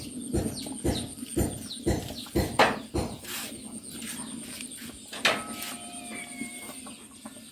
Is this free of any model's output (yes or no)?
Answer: yes